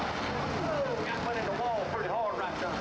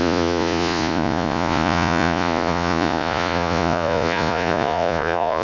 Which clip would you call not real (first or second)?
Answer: second